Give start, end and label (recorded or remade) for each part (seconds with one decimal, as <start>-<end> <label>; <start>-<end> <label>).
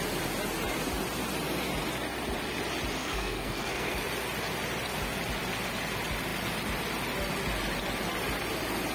0.0-3.0 recorded; 3.0-4.0 remade; 4.0-8.9 recorded